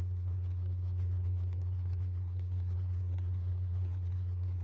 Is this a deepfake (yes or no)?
yes